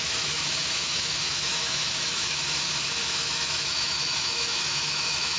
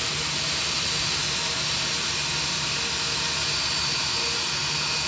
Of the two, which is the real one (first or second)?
second